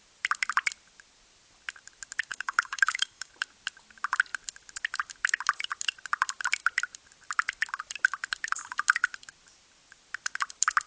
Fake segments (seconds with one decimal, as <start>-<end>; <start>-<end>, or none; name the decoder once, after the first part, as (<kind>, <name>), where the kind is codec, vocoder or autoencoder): 2.3-3.3 (codec, DAC)